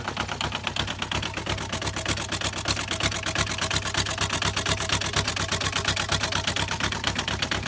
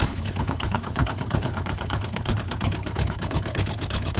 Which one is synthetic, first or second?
second